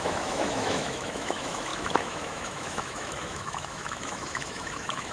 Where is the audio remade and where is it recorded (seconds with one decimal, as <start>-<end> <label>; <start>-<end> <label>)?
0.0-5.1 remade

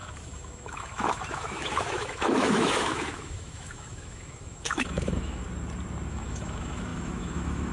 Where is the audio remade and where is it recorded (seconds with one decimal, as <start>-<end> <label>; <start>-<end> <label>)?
0.0-5.4 remade; 5.4-6.1 recorded; 6.1-7.7 remade

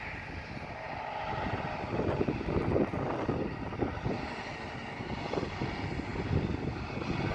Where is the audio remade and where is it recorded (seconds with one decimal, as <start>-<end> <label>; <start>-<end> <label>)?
0.0-7.3 recorded

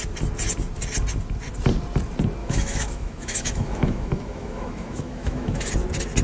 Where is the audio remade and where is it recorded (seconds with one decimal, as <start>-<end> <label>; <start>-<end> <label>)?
0.0-2.4 recorded; 2.4-5.7 remade; 5.7-6.2 recorded

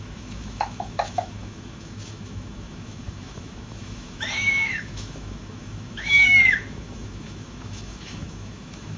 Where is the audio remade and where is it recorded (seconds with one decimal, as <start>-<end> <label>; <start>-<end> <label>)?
0.0-9.0 remade